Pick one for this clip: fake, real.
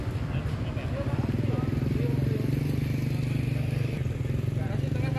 real